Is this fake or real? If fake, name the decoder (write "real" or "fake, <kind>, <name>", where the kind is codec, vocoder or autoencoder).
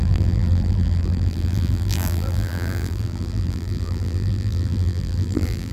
fake, vocoder, BigVGAN v2